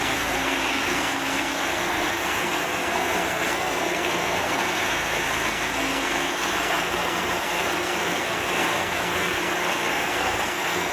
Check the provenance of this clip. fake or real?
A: fake